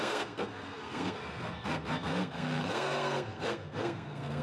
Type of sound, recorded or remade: remade